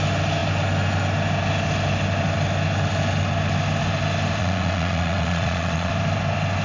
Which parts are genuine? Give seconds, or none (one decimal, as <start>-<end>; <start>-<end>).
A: 0.0-4.4; 5.9-6.6